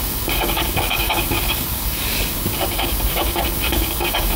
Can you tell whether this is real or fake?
fake